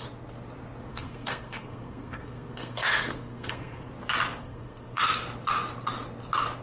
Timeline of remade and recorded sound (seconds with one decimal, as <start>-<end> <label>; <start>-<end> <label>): 0.0-0.9 recorded; 0.9-3.9 remade; 3.9-4.4 recorded; 4.4-5.0 remade; 5.0-6.6 recorded